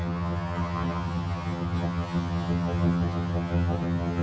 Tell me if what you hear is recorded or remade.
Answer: remade